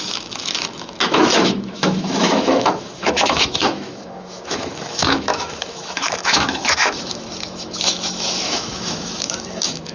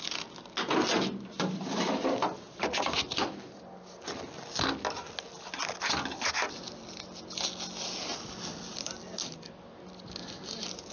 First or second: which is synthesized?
first